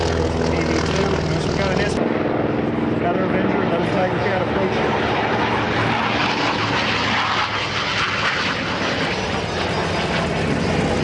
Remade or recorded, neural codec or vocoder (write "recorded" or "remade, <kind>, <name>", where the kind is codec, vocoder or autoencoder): recorded